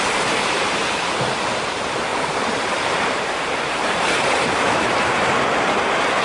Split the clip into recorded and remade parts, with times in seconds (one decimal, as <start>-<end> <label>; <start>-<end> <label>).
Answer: 0.0-2.1 recorded; 2.1-5.8 remade; 5.8-6.2 recorded